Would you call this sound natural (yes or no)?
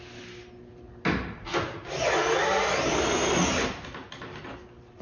yes